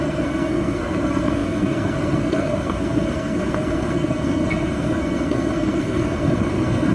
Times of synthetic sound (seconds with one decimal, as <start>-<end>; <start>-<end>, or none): 0.0-6.9